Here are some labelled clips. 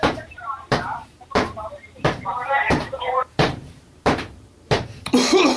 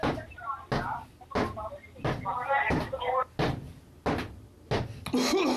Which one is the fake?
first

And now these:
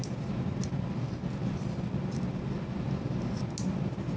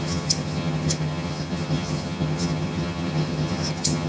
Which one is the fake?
second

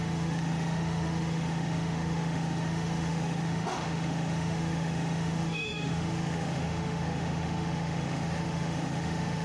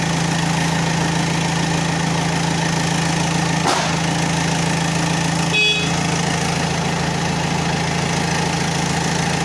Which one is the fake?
first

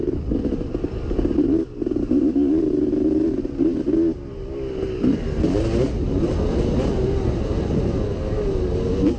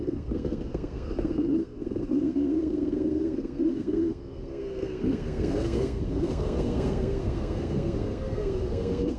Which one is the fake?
second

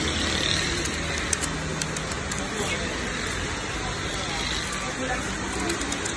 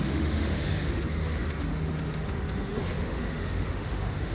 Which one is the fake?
second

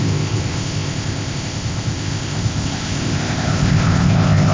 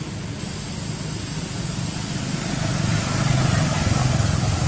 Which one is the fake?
first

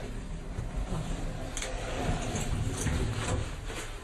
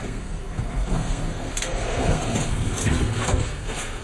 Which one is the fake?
second